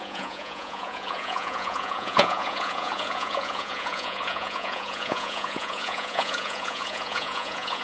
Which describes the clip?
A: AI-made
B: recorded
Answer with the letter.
A